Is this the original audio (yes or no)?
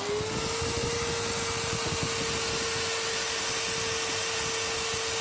yes